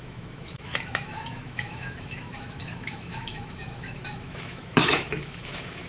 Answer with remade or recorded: remade